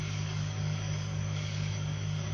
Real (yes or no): no